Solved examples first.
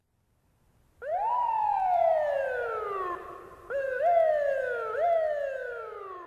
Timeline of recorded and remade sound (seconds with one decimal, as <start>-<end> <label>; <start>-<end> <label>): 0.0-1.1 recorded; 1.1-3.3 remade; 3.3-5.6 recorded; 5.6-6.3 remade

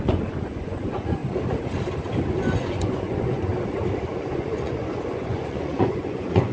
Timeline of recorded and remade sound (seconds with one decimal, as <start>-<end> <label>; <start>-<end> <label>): 0.0-1.2 remade; 1.2-2.3 recorded; 2.3-3.5 remade; 3.5-4.3 recorded; 4.3-6.5 remade

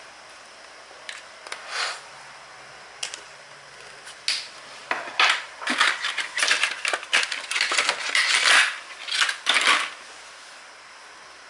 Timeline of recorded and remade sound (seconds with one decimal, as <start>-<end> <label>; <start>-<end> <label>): 0.0-11.5 recorded